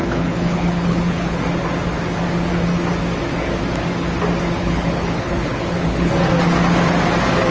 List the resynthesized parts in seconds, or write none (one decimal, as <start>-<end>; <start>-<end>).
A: 0.0-1.4; 4.6-6.1